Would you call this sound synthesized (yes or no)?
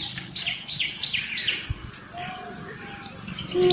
no